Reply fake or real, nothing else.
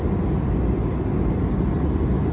real